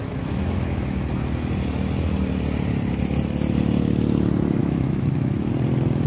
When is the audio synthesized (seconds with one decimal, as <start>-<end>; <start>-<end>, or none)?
0.0-1.1; 4.6-5.5